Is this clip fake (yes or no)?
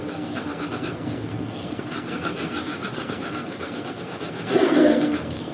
yes